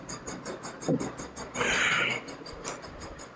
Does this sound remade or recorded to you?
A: recorded